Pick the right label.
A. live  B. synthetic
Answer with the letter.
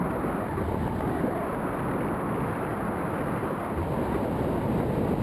A